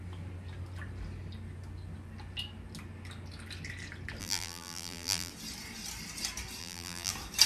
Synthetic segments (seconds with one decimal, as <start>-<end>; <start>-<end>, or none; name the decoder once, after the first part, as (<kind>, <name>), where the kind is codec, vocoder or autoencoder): 4.2-5.3 (vocoder, BigVGAN v2); 6.6-7.1